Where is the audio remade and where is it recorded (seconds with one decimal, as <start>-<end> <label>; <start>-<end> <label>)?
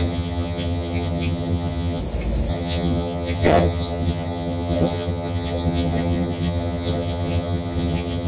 0.0-2.0 remade; 2.0-2.5 recorded; 2.5-8.3 remade